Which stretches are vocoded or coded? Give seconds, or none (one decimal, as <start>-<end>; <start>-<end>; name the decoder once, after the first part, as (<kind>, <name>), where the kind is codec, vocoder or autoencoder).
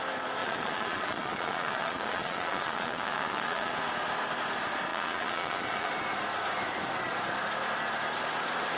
0.4-3.7 (vocoder, Vocos); 4.9-5.9